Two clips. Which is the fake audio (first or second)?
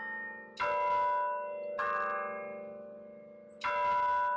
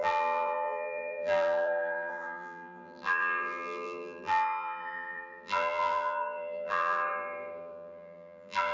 second